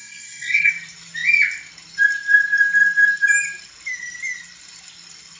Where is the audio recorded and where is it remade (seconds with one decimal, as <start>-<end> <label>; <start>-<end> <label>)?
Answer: 0.0-0.7 remade; 0.7-5.4 recorded